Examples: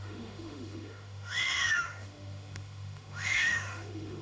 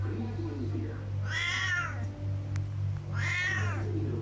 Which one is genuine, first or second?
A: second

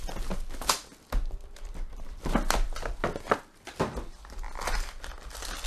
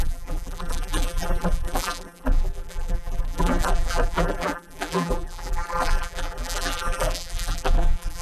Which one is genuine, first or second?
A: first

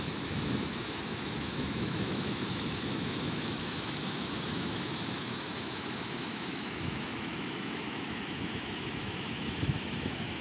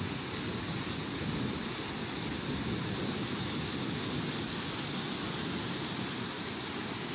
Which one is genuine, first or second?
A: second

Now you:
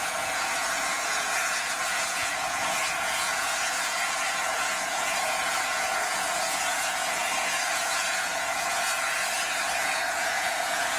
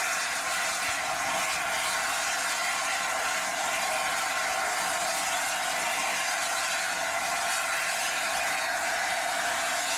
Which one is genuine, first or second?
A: second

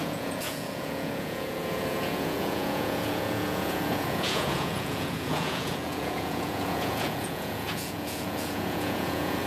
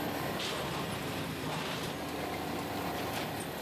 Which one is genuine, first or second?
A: second